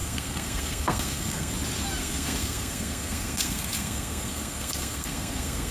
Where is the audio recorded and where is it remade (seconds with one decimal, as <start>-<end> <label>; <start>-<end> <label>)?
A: 0.0-1.5 remade; 1.5-2.0 recorded; 2.0-5.7 remade